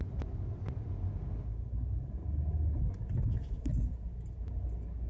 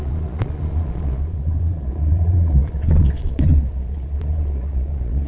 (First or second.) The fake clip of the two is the second